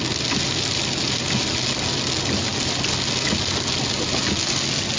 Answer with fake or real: real